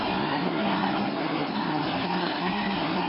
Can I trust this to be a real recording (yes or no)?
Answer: no